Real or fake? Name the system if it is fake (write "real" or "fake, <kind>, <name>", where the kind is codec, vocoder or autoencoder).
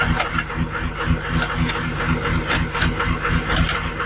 real